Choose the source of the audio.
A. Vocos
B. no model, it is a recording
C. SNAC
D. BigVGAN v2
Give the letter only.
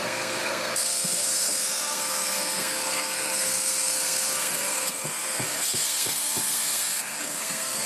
C